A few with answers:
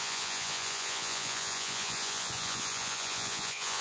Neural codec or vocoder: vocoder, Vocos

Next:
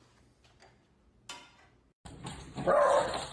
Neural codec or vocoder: none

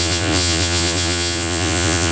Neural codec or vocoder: vocoder, Vocos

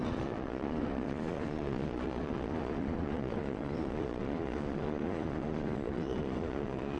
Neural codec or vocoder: vocoder, Vocos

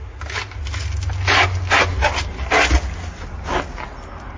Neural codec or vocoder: none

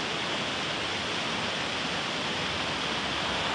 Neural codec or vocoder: none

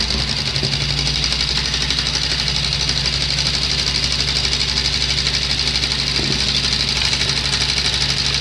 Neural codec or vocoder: none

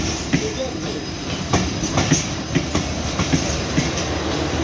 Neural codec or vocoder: none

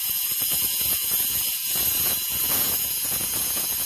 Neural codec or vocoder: vocoder, Vocos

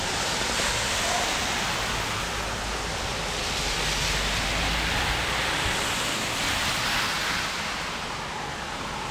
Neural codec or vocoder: none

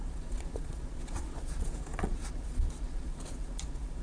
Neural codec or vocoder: vocoder, Vocos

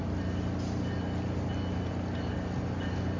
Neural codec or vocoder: none